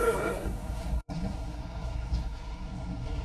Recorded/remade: remade